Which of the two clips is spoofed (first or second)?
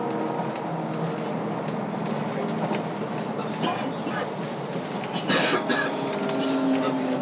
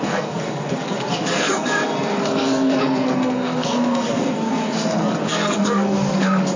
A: second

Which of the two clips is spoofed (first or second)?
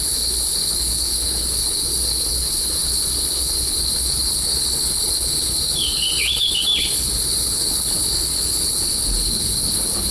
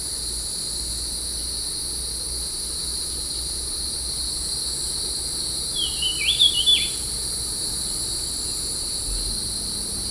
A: first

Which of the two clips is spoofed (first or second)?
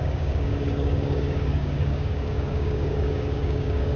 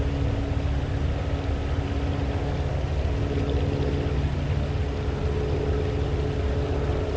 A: first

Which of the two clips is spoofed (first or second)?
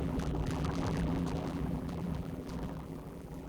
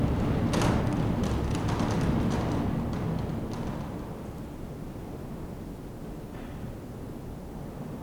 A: first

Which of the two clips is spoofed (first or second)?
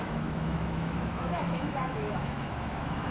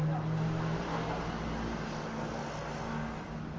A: first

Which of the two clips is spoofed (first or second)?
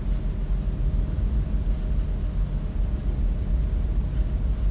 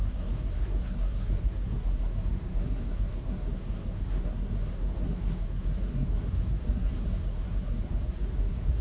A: second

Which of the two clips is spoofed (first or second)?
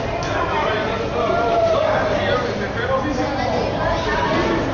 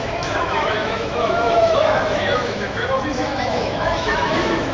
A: second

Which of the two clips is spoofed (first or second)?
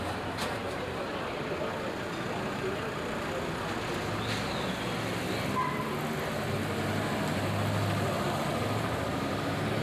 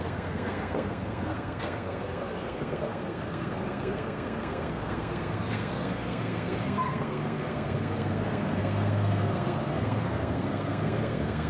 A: second